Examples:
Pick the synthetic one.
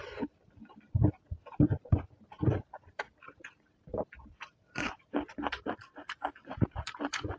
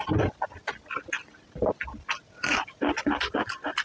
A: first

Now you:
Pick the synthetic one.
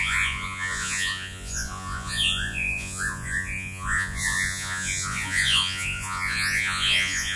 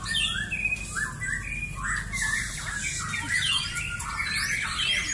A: first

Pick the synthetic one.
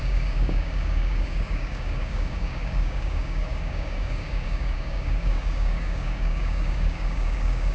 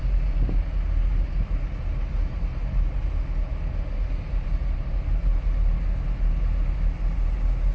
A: first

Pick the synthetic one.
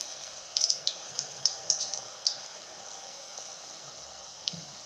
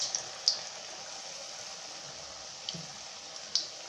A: first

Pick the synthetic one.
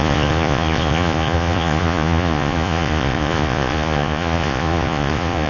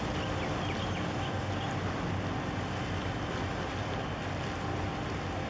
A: first